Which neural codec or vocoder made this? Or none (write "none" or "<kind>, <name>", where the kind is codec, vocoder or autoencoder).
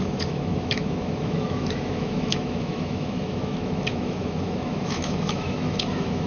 autoencoder, DAC-VAE